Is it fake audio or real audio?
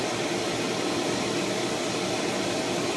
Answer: real